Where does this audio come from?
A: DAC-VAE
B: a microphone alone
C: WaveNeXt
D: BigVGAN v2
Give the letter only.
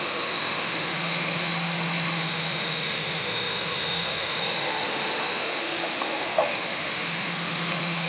A